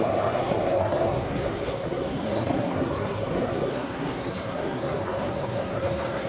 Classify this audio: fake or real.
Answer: fake